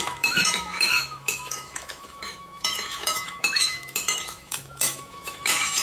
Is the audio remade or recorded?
remade